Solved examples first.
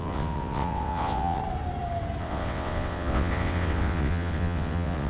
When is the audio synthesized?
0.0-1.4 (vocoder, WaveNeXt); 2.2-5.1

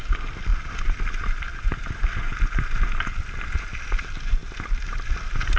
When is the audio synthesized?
none

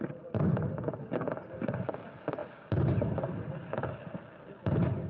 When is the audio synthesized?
none

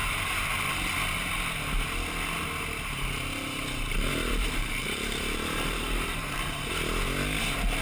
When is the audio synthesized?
4.3-6.7 (vocoder, BigVGAN v2)

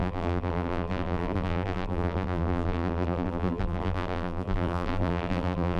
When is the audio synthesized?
0.0-5.8 (vocoder, BigVGAN v2)

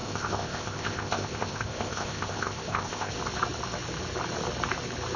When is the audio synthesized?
0.0-3.1 (codec, ZipCodec)

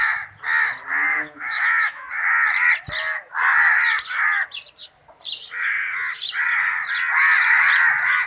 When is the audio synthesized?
1.1-2.1 (autoencoder, DAC-VAE)